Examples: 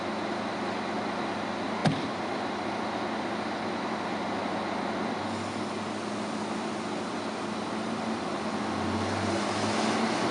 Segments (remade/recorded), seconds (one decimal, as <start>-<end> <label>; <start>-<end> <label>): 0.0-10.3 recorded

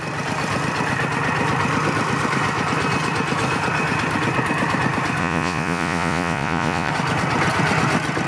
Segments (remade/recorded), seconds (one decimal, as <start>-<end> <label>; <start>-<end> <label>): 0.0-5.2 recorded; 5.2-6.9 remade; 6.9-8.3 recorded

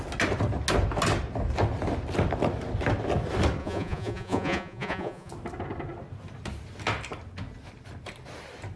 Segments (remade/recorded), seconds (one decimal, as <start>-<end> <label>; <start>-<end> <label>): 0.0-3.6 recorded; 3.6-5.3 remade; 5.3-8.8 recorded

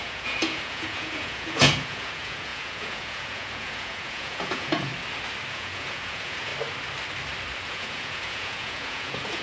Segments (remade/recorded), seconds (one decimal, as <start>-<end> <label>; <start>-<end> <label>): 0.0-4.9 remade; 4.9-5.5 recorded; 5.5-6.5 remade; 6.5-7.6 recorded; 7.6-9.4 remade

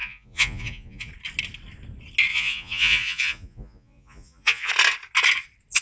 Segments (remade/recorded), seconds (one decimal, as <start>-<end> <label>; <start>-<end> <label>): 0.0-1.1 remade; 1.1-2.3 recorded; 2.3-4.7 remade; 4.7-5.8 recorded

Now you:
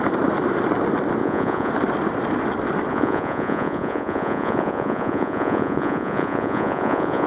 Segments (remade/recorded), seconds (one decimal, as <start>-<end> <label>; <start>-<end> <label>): 0.0-1.2 recorded; 1.2-1.7 remade; 1.7-2.9 recorded; 2.9-7.3 remade

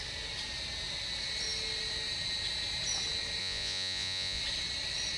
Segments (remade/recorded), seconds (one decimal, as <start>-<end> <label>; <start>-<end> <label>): 0.0-3.4 recorded; 3.4-4.4 remade; 4.4-5.2 recorded